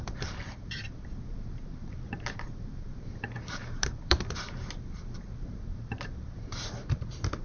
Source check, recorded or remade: remade